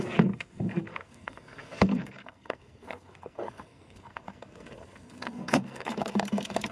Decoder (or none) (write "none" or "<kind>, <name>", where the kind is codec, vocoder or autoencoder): codec, SNAC